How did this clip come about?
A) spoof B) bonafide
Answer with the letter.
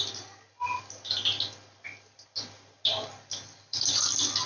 B